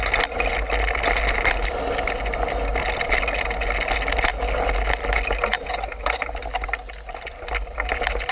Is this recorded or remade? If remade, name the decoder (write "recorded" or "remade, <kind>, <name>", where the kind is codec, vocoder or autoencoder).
recorded